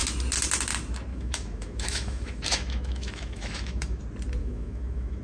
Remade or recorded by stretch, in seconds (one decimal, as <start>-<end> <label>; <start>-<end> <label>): 0.0-1.1 recorded; 1.1-4.0 remade; 4.0-4.4 recorded; 4.4-5.2 remade